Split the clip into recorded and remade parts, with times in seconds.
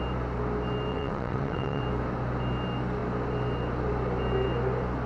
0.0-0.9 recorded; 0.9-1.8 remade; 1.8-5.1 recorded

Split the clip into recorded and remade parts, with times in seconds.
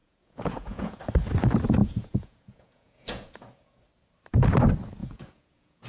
0.0-1.0 remade; 1.0-1.8 recorded; 1.8-3.8 remade; 3.8-5.0 recorded; 5.0-5.9 remade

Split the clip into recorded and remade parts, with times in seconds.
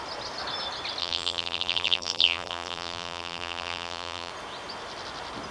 0.0-1.0 recorded; 1.0-4.3 remade; 4.3-5.5 recorded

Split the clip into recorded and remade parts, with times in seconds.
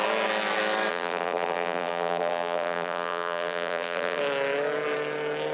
0.0-0.9 recorded; 0.9-4.2 remade; 4.2-5.5 recorded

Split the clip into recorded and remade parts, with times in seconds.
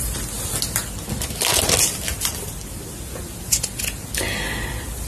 0.0-5.1 recorded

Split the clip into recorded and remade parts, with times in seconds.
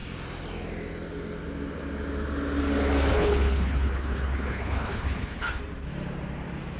0.0-3.1 recorded; 3.1-5.6 remade; 5.6-6.8 recorded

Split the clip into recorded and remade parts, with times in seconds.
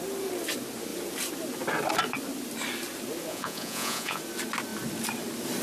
0.0-3.3 recorded; 3.3-4.2 remade; 4.2-5.6 recorded